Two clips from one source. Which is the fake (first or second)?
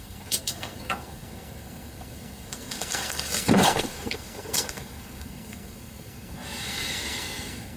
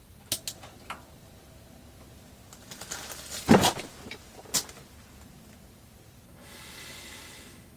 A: first